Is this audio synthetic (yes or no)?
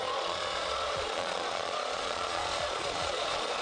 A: yes